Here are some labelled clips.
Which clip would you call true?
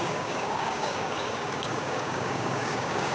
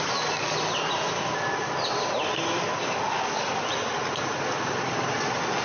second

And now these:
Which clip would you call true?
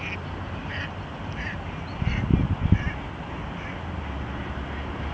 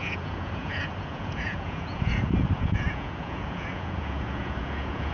first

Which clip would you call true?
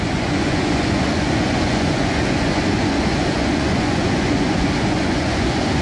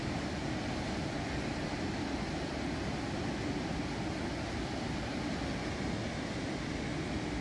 second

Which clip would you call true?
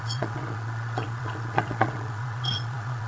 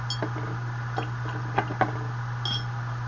second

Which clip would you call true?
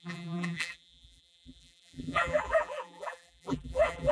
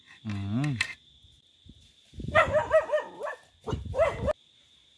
second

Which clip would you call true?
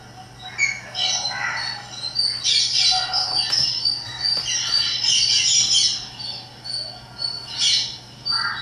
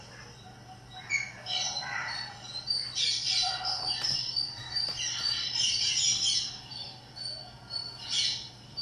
first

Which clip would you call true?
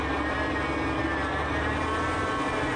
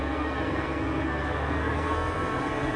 first